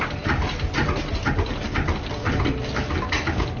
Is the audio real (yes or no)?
yes